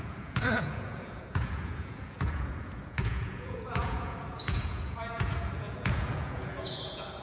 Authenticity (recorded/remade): remade